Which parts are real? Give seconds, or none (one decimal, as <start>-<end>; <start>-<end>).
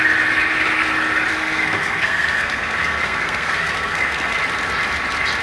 0.0-1.3; 4.4-5.4